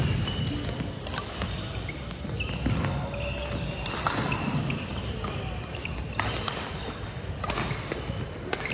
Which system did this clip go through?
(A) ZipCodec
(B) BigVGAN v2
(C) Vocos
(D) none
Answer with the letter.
D